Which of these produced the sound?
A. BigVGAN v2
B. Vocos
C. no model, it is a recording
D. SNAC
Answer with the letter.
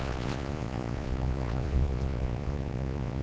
B